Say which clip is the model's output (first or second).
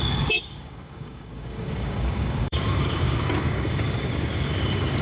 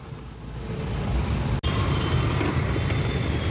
first